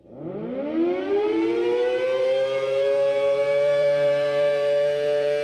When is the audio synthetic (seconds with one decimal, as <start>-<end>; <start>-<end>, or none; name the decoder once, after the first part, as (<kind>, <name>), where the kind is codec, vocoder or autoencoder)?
0.0-0.4 (vocoder, BigVGAN v2); 1.1-5.4